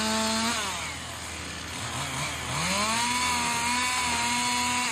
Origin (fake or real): real